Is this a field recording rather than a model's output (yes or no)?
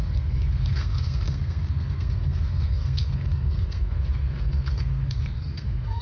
no